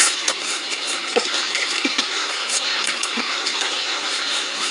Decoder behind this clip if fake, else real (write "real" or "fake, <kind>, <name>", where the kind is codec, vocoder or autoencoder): fake, codec, SNAC